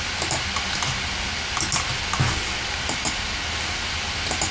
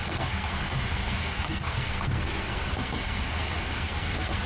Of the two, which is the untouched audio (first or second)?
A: first